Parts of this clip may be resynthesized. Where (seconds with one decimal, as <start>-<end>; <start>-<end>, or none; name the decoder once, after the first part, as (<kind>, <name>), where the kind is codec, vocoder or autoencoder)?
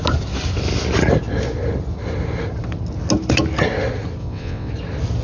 4.2-4.7 (vocoder, WaveNeXt)